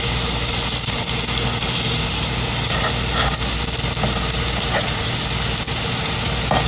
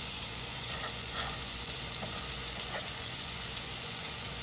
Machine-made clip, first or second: second